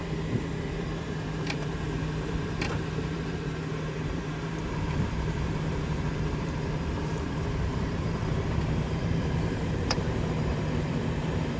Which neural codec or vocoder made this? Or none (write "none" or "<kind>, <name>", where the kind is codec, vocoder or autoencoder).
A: vocoder, BigVGAN v2